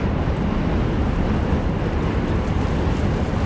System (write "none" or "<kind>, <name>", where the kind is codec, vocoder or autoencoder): none